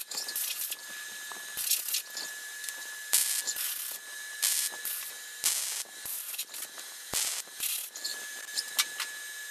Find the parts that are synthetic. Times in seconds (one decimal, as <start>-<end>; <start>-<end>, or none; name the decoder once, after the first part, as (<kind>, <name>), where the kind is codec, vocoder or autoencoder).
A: 8.1-8.7 (vocoder, BigVGAN v2)